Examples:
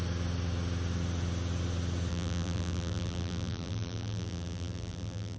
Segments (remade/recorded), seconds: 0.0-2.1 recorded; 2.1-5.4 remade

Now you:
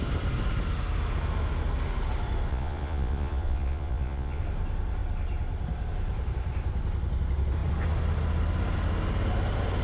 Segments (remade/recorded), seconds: 0.0-2.5 recorded; 2.5-4.4 remade; 4.4-9.8 recorded

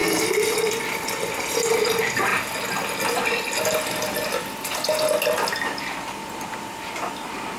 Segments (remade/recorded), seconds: 0.0-1.3 recorded; 1.3-2.3 remade; 2.3-5.5 recorded; 5.5-7.6 remade